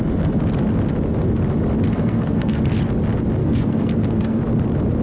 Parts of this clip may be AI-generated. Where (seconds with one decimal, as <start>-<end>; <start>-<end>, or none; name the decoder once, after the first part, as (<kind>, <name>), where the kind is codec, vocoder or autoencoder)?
1.9-2.6 (codec, SNAC); 3.4-4.4

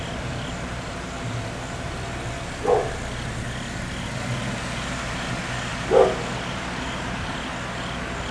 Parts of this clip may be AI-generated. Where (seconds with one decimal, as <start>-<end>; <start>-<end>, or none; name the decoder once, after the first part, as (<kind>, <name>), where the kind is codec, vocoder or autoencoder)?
none

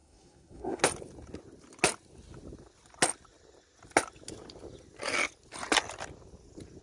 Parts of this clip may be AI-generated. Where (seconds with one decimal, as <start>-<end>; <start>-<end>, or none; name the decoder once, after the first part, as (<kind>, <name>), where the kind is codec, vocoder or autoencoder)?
0.0-0.8 (codec, SNAC)